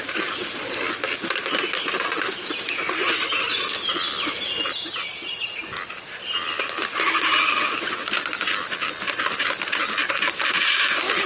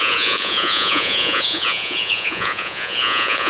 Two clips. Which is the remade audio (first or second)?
second